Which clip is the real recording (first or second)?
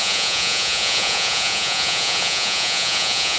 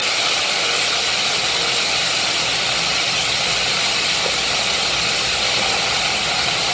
second